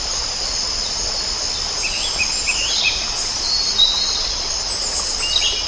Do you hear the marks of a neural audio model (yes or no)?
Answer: no